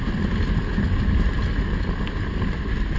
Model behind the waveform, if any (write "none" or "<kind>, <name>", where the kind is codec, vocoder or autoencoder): none